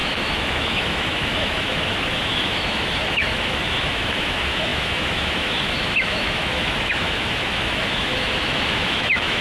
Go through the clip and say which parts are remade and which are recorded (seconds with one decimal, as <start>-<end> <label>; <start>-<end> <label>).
0.0-9.4 remade